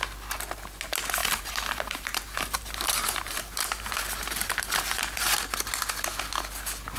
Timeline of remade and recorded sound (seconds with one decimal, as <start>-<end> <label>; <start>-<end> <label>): 0.0-1.2 recorded; 1.2-5.2 remade; 5.2-7.0 recorded